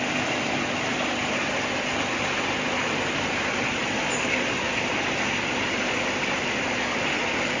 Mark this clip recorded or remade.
recorded